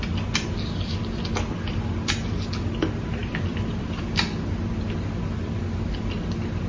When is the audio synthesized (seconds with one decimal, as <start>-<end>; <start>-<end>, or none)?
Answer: 3.2-4.9